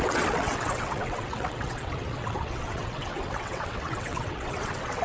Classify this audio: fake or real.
fake